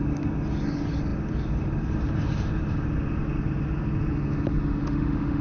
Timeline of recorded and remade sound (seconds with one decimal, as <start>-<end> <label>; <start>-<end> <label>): 0.0-4.8 recorded; 4.8-5.4 remade